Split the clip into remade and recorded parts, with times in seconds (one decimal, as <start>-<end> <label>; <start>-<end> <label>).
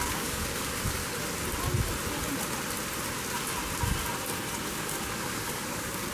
0.0-1.0 remade; 1.0-4.7 recorded; 4.7-6.1 remade